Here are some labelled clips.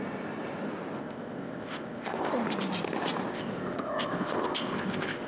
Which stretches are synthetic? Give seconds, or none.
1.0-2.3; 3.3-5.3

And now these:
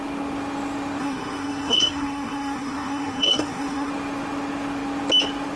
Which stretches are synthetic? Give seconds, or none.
1.0-3.9

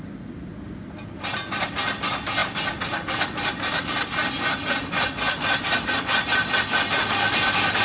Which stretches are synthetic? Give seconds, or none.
none